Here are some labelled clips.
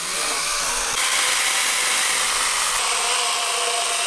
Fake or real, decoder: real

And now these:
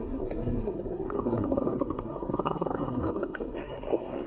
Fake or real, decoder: fake, codec, SNAC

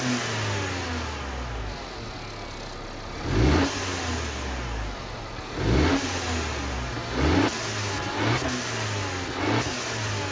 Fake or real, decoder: real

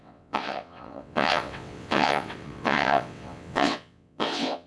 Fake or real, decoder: fake, vocoder, WaveNeXt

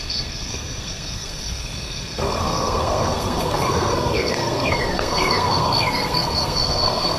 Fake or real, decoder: fake, codec, SNAC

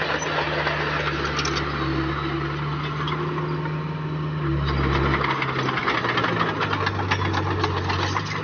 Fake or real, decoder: real